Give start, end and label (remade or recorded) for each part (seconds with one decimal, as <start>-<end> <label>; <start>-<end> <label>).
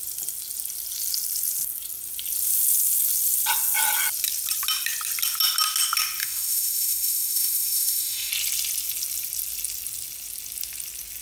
0.0-6.2 recorded; 6.2-8.3 remade; 8.3-11.2 recorded